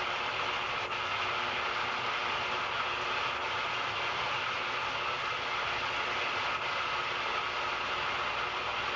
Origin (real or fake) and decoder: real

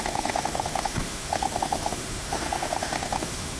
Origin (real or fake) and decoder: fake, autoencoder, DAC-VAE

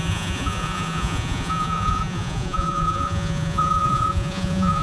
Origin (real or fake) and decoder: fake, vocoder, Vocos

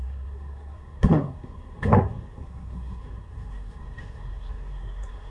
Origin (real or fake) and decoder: fake, codec, SNAC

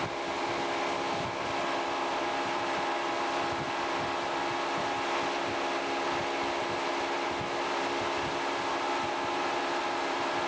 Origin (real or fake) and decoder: real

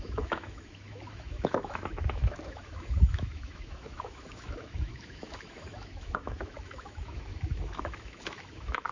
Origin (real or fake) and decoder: fake, autoencoder, DAC-VAE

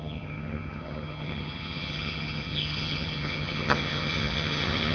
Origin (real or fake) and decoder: fake, vocoder, HiFi-GAN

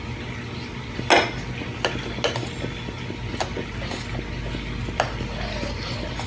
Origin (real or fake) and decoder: real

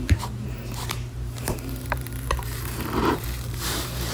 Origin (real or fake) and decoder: fake, vocoder, BigVGAN v2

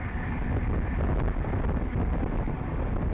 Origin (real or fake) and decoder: real